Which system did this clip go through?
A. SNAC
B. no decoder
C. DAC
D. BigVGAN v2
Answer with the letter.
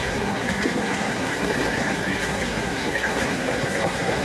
A